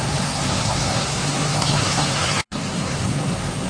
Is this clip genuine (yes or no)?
no